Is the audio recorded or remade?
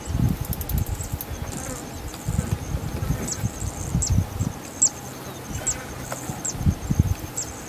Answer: recorded